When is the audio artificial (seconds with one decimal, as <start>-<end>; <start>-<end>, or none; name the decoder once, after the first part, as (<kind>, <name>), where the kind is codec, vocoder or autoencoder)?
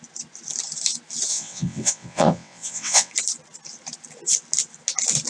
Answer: 1.3-3.1 (vocoder, WaveNeXt)